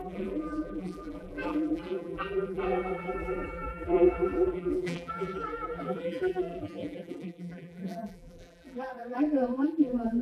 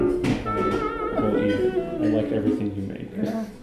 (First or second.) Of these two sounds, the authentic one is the second